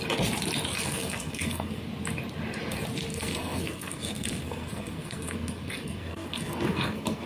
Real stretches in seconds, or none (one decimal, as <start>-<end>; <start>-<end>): 0.0-0.7; 1.8-3.1